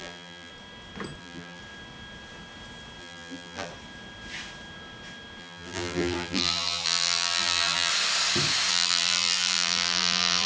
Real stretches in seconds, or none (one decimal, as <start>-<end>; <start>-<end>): 0.5-1.2; 1.6-3.0; 3.7-5.4; 7.9-8.7